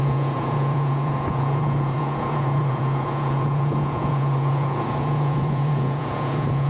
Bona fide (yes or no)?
no